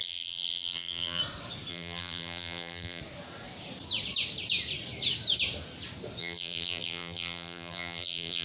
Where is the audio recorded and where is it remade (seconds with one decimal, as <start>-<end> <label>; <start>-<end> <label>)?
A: 0.0-1.2 remade; 1.2-1.7 recorded; 1.7-3.0 remade; 3.0-6.2 recorded; 6.2-8.4 remade